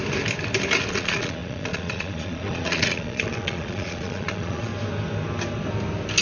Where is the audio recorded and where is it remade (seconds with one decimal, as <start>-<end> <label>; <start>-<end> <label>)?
0.0-0.9 recorded; 0.9-4.7 remade; 4.7-6.2 recorded